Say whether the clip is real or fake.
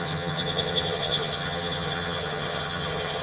fake